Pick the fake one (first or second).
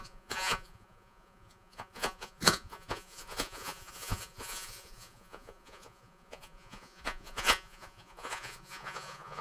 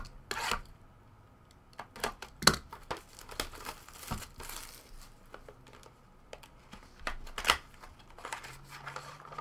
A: first